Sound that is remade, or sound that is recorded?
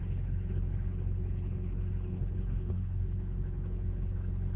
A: remade